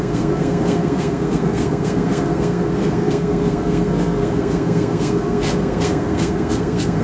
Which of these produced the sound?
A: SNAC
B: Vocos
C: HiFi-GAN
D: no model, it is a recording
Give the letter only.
A